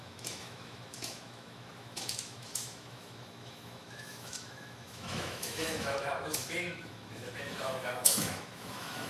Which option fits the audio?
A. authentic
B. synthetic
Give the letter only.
B